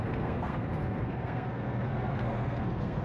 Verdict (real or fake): fake